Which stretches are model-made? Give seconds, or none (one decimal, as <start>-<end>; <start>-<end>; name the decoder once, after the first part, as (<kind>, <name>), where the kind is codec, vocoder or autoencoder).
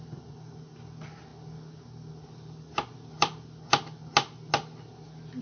none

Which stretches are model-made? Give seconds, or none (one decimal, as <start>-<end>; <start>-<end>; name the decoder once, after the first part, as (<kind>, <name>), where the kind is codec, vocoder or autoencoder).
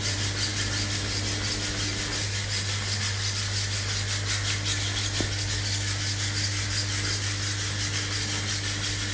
none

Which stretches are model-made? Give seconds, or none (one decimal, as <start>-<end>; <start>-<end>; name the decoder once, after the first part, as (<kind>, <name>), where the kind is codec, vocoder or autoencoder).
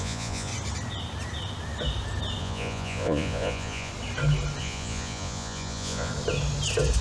0.0-0.5 (vocoder, Vocos); 2.4-3.9; 4.6-6.1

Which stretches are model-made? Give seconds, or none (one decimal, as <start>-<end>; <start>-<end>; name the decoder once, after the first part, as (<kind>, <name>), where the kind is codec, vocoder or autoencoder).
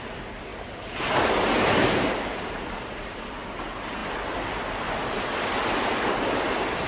none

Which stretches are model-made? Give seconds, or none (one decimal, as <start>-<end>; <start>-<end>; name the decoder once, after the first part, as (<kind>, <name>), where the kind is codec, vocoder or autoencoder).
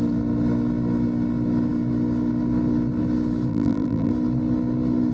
3.5-4.1 (vocoder, BigVGAN v2)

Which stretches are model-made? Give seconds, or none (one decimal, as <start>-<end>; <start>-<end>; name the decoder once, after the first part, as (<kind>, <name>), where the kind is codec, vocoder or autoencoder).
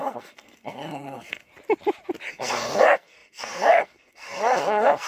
0.0-1.5 (codec, SNAC); 2.3-5.1